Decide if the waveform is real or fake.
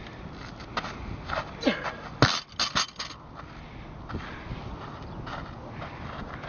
real